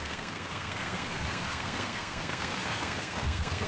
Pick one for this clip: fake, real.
fake